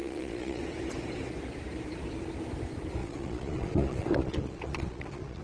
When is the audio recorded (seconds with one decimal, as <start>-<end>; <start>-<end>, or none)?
0.6-3.0

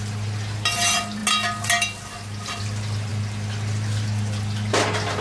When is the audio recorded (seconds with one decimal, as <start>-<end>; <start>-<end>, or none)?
0.0-5.2